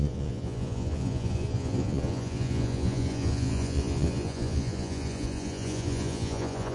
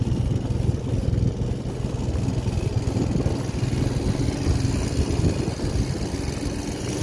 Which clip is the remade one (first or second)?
first